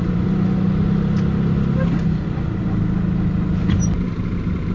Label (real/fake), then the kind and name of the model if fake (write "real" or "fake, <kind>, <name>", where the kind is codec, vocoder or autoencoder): real